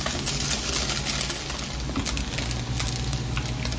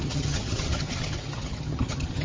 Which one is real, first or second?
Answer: first